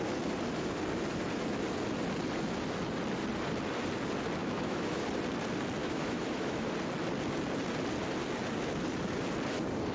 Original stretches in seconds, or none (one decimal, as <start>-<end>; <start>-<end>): 0.0-4.4; 5.0-5.8; 6.7-9.9